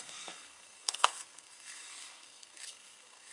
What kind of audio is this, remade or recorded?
remade